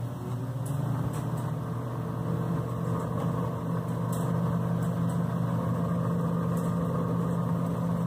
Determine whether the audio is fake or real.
real